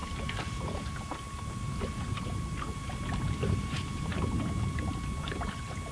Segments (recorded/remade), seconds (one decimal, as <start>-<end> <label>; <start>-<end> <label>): 0.0-5.9 recorded